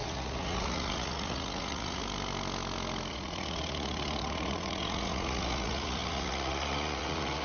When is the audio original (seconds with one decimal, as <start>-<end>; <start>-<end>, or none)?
2.0-3.1